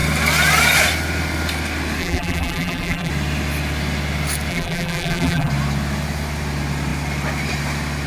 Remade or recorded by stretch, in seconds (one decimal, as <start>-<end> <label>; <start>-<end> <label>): 0.0-2.0 recorded; 2.0-3.1 remade; 3.1-4.5 recorded; 4.5-5.5 remade; 5.5-8.1 recorded